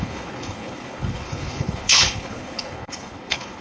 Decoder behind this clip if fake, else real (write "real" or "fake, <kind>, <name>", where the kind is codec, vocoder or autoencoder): fake, codec, HILCodec